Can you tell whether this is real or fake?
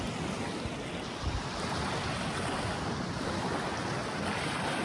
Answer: real